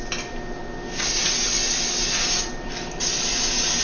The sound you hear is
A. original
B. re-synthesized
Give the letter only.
A